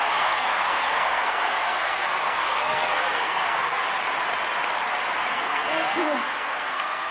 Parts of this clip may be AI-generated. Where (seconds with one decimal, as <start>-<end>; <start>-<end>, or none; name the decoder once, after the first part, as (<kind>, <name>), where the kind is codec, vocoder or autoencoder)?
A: 0.0-3.8 (codec, SNAC); 5.3-7.1